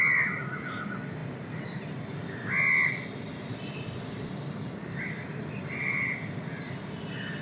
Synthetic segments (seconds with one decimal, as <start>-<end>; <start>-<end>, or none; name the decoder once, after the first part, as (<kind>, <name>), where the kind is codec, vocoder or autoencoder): none